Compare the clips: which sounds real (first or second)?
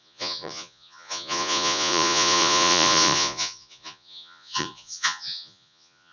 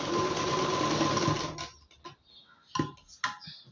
second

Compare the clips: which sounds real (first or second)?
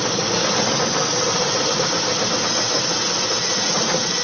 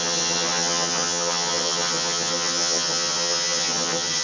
first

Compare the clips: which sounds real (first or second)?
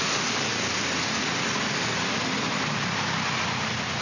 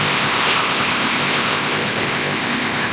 first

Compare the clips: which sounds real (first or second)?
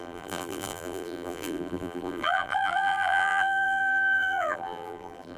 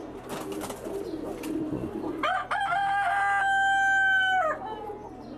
second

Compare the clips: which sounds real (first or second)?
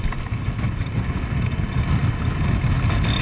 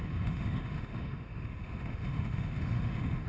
first